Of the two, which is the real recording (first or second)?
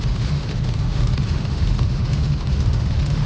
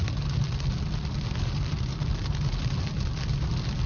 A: second